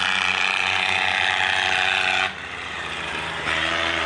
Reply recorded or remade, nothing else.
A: remade